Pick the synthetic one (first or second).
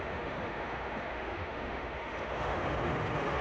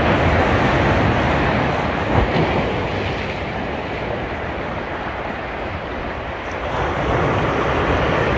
first